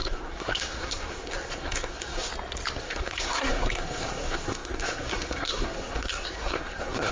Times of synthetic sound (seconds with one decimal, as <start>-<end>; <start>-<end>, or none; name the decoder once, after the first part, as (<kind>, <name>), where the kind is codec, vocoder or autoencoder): 0.0-2.3 (codec, SNAC); 2.8-7.1